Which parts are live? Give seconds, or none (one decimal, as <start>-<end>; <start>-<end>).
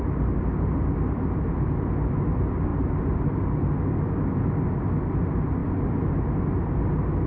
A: 5.6-7.3